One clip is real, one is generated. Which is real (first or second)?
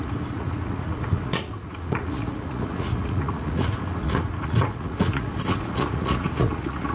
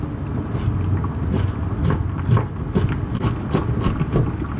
second